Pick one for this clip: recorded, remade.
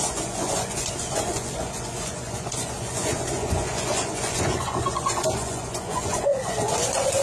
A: remade